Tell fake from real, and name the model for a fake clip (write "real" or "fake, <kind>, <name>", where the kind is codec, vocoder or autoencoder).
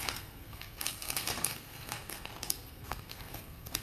fake, codec, SNAC